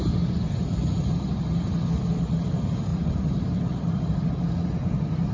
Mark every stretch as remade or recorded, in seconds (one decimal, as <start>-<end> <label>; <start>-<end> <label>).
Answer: 0.0-5.3 recorded